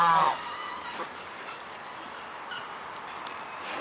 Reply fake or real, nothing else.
real